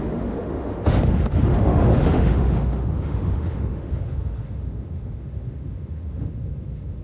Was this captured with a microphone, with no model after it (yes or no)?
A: no